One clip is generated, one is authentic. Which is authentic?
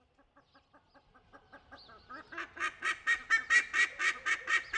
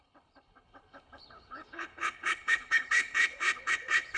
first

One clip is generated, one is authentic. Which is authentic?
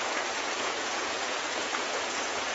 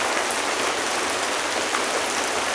second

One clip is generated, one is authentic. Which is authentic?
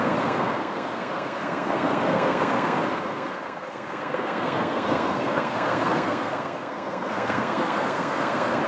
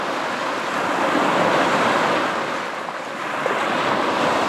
second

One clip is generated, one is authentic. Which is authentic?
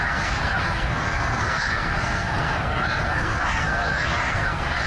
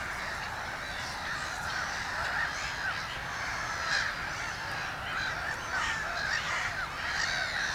second